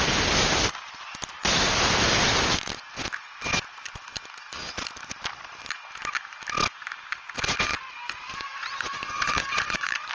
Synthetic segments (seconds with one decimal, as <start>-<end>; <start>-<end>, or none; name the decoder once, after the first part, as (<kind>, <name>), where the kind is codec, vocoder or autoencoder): 7.7-10.1 (vocoder, Vocos)